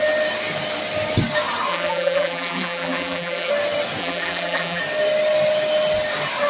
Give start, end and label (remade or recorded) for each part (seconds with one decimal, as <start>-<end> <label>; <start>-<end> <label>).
0.0-1.7 recorded; 1.7-3.5 remade; 3.5-4.0 recorded; 4.0-4.8 remade; 4.8-6.5 recorded